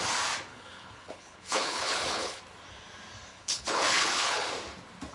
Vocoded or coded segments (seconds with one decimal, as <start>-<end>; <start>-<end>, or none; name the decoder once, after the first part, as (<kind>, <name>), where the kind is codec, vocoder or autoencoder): 0.5-2.4 (codec, HILCodec); 3.3-4.5